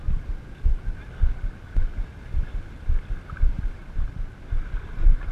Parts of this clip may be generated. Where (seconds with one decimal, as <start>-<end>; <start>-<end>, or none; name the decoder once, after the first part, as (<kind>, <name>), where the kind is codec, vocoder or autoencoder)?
3.2-3.8 (vocoder, BigVGAN v2)